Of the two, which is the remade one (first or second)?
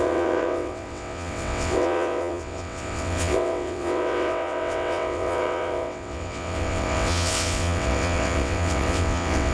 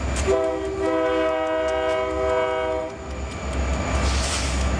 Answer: first